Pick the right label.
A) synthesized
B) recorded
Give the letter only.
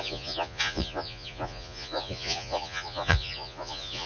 A